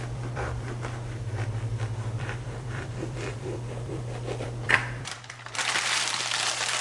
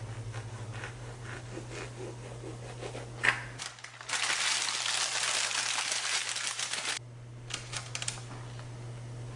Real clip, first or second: second